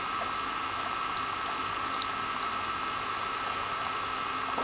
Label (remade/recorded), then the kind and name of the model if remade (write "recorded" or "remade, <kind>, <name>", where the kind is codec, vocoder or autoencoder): recorded